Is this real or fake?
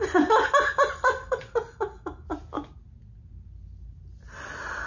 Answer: real